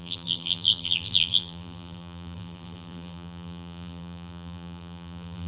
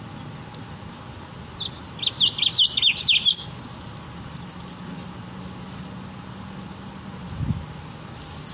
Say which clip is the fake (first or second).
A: first